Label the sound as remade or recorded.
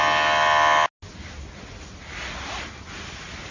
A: recorded